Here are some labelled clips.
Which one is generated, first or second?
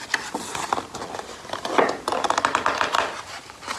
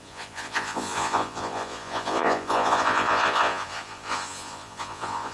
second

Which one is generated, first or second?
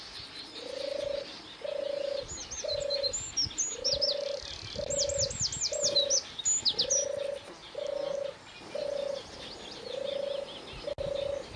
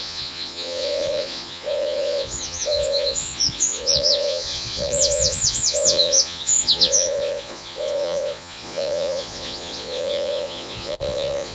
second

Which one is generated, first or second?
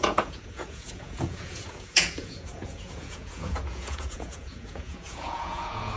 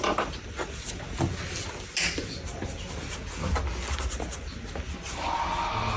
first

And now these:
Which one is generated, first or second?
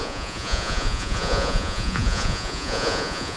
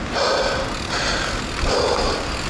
first